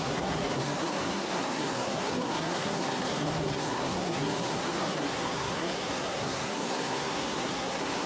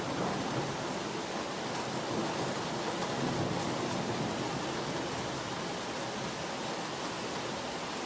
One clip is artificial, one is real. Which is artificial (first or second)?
first